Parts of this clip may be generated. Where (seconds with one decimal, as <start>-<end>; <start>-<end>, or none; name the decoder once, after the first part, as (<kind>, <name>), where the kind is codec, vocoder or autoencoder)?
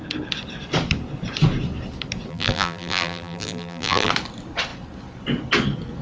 2.3-4.1 (vocoder, BigVGAN v2)